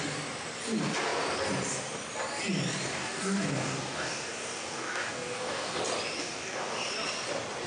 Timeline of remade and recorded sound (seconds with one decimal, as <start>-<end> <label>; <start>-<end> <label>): 0.0-2.9 recorded; 2.9-5.8 remade; 5.8-6.2 recorded; 6.2-6.9 remade; 6.9-7.7 recorded